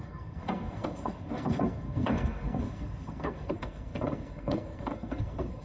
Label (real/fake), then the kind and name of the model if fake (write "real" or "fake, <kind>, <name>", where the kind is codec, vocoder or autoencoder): fake, codec, SNAC